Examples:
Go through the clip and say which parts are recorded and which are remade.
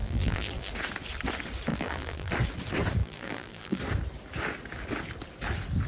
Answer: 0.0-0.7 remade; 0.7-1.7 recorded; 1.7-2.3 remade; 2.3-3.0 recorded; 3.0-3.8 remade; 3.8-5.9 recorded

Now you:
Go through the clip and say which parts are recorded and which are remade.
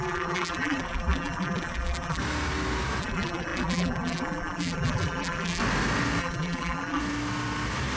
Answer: 0.0-2.2 remade; 2.2-3.0 recorded; 3.0-5.6 remade; 5.6-6.2 recorded; 6.2-7.0 remade; 7.0-8.0 recorded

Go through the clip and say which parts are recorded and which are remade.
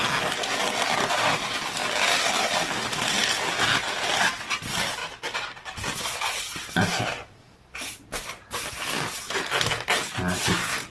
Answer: 0.0-5.0 recorded; 5.0-8.7 remade; 8.7-10.9 recorded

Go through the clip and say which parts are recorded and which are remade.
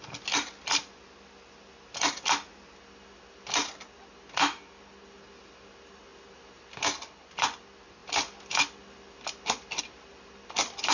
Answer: 0.0-10.9 recorded